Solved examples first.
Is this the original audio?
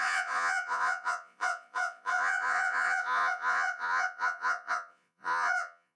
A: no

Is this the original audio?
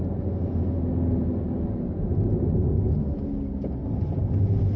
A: yes